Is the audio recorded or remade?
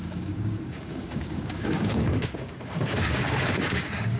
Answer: remade